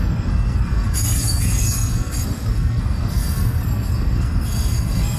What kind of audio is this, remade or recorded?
remade